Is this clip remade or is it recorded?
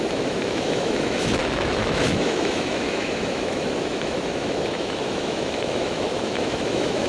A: remade